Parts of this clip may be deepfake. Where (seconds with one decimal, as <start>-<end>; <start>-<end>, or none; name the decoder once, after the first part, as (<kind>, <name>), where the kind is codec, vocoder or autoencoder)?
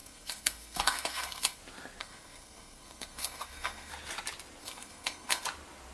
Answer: 0.0-1.6 (codec, SNAC); 2.0-3.9; 4.6-5.4